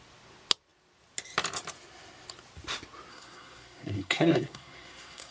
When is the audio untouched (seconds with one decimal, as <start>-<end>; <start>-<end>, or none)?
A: 0.0-3.1

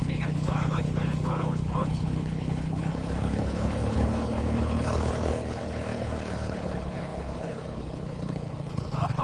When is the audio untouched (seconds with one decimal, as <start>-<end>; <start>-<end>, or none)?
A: none

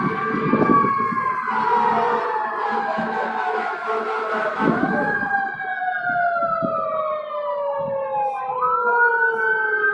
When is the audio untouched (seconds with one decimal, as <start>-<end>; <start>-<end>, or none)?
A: 0.0-2.7; 5.3-9.9

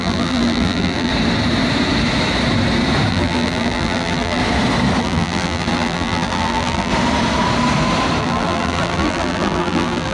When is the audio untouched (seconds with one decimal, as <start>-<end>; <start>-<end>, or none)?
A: 1.1-3.1; 4.4-5.0; 6.9-8.2

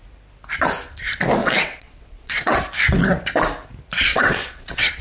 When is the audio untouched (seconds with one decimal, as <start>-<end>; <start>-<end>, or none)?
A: 0.0-1.4; 2.6-4.1

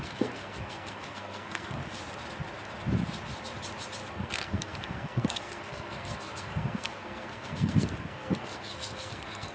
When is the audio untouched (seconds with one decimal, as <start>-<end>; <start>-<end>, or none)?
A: 1.8-4.1

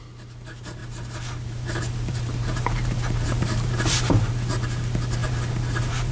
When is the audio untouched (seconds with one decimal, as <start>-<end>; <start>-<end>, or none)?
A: 0.0-0.8; 4.1-5.2

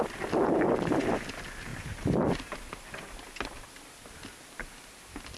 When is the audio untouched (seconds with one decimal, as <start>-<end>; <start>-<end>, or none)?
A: 0.0-5.4